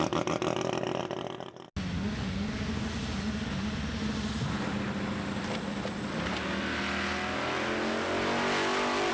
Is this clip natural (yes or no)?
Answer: yes